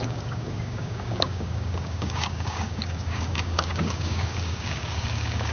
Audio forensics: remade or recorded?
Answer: remade